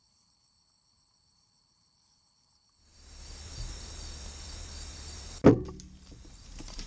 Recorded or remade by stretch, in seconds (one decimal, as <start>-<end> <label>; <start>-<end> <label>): 0.0-2.9 remade; 2.9-6.2 recorded; 6.2-6.9 remade